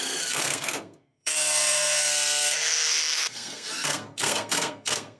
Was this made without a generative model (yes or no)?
no